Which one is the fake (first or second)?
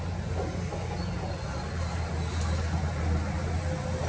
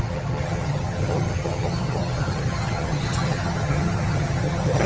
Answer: second